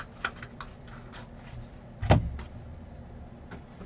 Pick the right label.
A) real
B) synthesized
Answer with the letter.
A